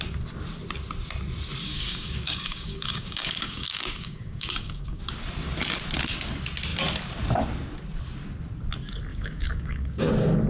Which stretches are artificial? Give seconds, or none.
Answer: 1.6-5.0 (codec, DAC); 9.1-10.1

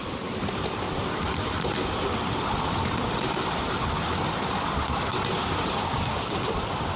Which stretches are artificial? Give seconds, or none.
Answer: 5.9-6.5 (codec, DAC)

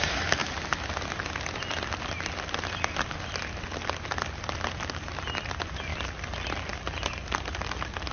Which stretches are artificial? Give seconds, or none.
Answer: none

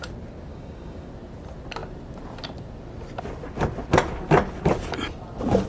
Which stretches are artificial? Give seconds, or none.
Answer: 0.5-1.1 (codec, DAC)